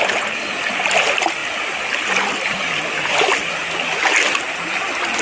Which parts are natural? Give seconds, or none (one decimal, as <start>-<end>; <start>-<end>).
0.0-5.2